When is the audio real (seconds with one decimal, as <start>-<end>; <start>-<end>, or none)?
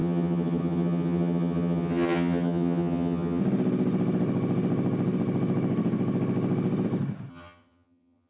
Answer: 3.4-7.3